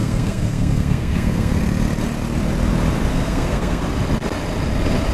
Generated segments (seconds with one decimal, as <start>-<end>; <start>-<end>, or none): 0.0-1.6; 3.1-3.8